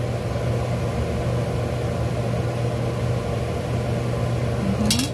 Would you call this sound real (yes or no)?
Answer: yes